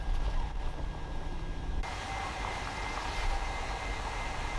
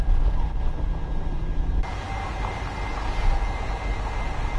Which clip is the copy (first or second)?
first